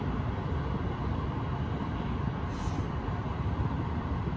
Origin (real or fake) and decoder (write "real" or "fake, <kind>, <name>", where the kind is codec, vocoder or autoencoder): fake, vocoder, BigVGAN v2